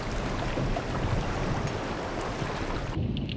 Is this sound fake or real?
real